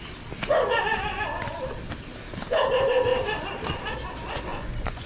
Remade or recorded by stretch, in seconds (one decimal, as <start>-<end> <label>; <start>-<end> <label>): 0.0-4.5 recorded; 4.5-5.1 remade